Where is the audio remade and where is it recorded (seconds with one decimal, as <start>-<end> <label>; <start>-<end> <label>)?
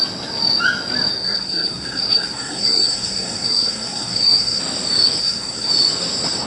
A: 0.0-1.1 recorded; 1.1-4.6 remade; 4.6-5.2 recorded; 5.2-5.7 remade; 5.7-6.5 recorded